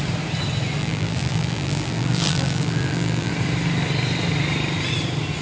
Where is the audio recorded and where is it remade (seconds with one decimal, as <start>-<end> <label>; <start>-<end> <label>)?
0.0-0.8 recorded; 0.8-3.3 remade; 3.3-5.4 recorded